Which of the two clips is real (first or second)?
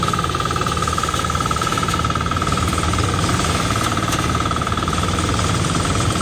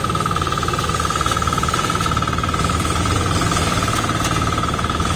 second